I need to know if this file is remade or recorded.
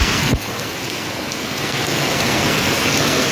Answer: remade